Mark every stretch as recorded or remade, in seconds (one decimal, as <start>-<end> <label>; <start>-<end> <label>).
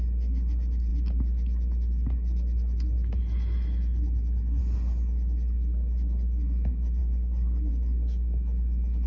0.0-7.0 recorded; 7.0-7.7 remade; 7.7-9.1 recorded